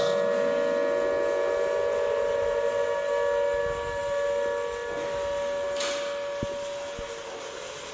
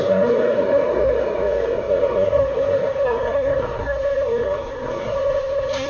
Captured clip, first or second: first